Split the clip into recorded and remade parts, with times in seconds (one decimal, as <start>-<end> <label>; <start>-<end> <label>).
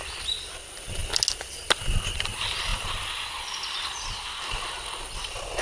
0.0-5.6 recorded